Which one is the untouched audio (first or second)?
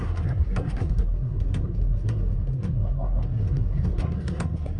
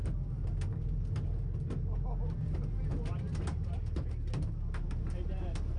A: second